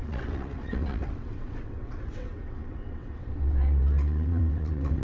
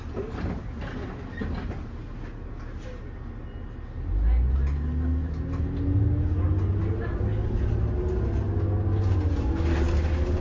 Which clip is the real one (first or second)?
second